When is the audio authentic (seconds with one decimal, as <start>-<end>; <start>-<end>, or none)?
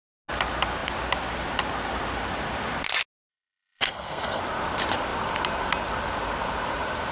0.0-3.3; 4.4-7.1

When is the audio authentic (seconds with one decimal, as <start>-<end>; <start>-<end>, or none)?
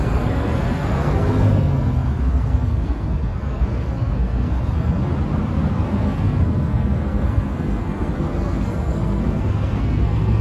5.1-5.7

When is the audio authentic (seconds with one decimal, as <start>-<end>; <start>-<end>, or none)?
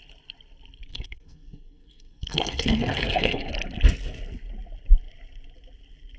0.0-0.9; 3.5-6.2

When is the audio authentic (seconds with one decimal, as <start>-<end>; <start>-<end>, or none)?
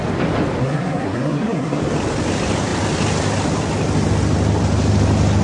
0.0-0.6; 1.8-5.4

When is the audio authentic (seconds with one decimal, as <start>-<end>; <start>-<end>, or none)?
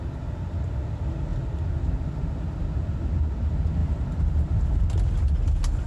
0.0-5.9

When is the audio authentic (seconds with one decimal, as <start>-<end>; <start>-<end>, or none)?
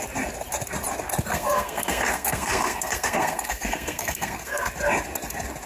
0.0-1.3; 4.7-5.7